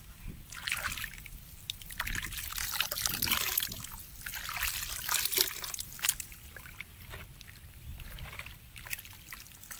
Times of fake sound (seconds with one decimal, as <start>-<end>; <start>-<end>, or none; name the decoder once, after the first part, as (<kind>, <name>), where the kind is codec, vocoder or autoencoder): none